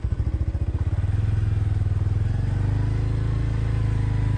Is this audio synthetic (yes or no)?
no